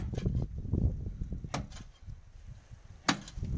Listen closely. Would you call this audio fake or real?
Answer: real